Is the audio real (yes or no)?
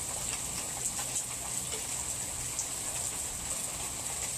yes